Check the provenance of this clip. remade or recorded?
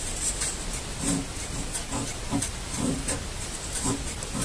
recorded